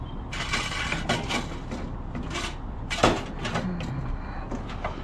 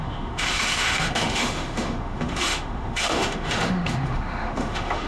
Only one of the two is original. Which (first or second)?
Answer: first